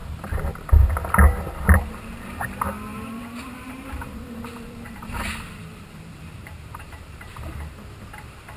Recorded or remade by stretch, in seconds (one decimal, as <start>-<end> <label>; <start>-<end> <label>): 0.0-2.9 recorded; 2.9-7.8 remade; 7.8-8.6 recorded